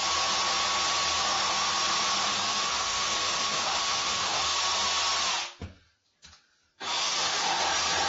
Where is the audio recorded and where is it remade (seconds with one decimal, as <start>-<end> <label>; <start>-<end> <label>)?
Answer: 0.0-2.3 recorded; 2.3-4.4 remade; 4.4-6.9 recorded; 6.9-7.6 remade; 7.6-8.1 recorded